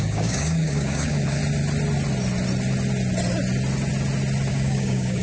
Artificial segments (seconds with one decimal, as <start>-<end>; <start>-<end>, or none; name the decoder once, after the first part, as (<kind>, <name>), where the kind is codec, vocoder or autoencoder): 0.0-1.4 (codec, DAC); 4.5-5.2